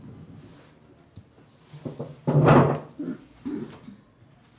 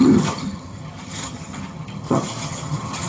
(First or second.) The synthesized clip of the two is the second